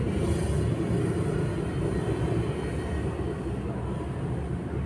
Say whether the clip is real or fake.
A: real